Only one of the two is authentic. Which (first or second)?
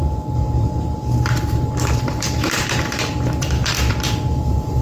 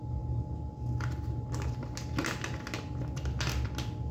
second